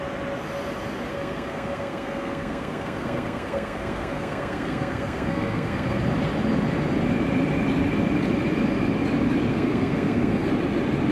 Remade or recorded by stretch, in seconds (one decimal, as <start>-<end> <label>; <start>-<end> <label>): 0.0-1.1 recorded; 1.1-6.0 remade; 6.0-9.5 recorded; 9.5-10.5 remade; 10.5-11.1 recorded